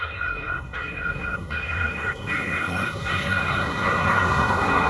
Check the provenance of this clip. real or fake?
fake